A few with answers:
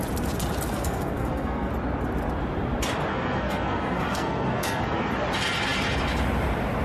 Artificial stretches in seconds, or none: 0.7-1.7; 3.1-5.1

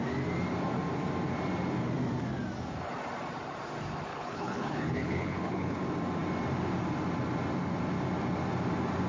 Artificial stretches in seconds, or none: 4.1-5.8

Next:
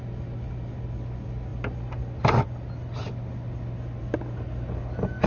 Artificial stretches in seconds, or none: none

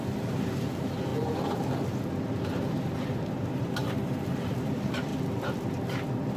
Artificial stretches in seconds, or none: 0.0-1.1; 2.7-5.1

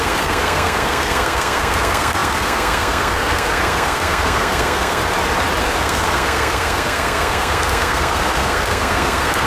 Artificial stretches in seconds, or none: 0.0-5.0; 5.6-9.5

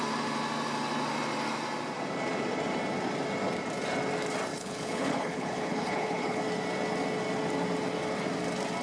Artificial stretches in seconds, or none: 4.5-6.4

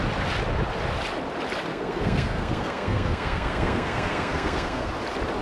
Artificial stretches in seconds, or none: 1.7-4.9

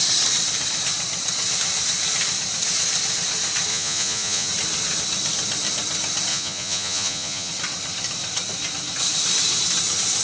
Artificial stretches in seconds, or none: 3.7-4.5; 6.3-7.5